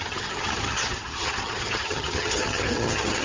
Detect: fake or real fake